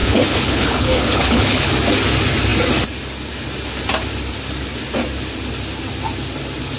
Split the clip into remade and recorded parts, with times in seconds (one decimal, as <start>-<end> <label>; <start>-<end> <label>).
0.0-1.7 remade; 1.7-6.8 recorded